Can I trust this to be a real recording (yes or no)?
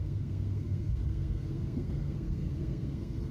no